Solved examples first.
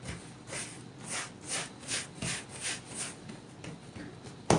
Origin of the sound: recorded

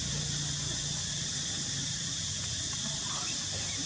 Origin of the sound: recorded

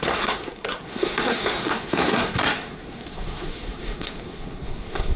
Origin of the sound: remade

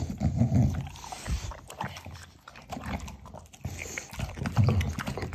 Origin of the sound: recorded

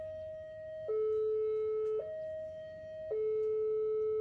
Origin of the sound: recorded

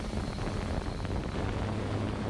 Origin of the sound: recorded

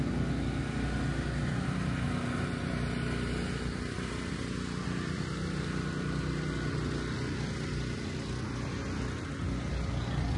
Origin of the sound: recorded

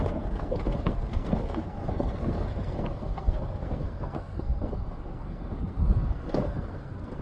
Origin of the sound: remade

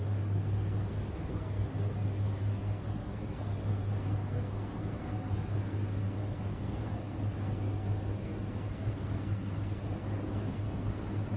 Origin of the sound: remade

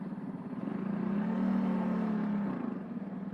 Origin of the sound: recorded